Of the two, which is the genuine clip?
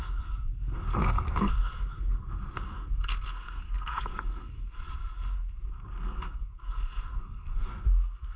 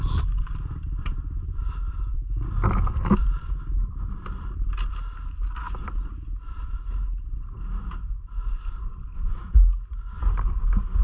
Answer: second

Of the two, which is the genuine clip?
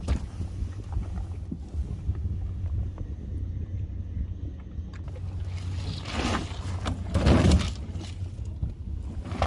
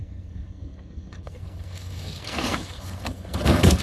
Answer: first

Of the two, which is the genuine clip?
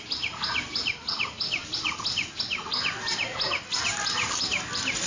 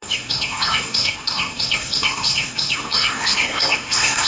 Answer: first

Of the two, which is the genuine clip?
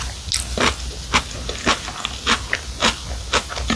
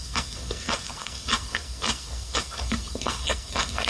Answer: first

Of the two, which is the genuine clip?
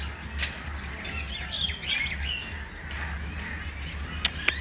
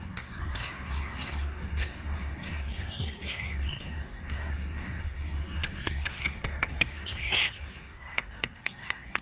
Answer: first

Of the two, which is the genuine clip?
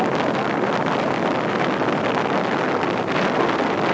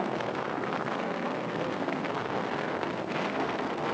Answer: first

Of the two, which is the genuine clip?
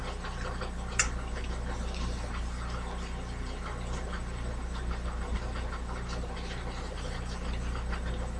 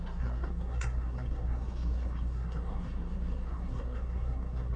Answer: first